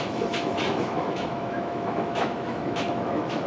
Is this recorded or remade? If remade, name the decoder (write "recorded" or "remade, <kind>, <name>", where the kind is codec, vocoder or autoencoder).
remade, autoencoder, DAC-VAE